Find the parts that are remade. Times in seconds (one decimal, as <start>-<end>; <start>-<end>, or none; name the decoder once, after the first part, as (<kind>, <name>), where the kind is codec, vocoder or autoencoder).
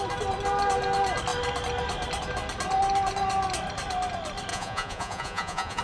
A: 4.5-5.8 (vocoder, Vocos)